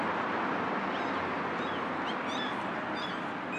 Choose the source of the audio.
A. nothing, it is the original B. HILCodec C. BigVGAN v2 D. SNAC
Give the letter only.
A